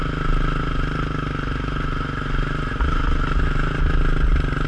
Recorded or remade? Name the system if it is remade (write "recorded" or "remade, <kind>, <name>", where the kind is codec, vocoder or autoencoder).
recorded